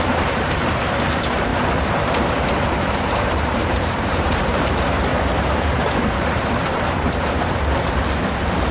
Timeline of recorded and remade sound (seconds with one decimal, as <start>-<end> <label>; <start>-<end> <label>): 0.0-1.5 remade; 1.5-2.3 recorded; 2.3-8.7 remade